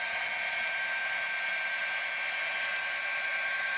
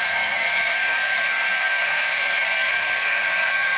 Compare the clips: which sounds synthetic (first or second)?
second